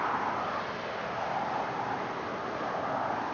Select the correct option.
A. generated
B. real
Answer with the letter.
B